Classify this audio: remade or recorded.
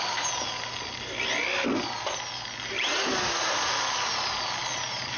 recorded